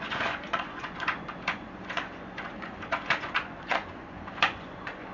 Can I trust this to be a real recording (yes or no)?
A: no